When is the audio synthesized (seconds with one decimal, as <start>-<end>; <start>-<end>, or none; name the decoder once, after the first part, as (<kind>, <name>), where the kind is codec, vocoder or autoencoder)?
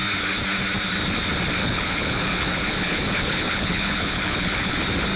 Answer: 1.6-4.7 (codec, HILCodec)